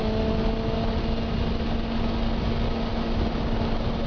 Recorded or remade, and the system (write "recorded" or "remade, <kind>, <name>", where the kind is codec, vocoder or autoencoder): recorded